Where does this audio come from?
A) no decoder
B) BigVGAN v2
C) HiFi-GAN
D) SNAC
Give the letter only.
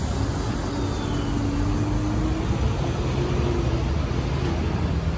A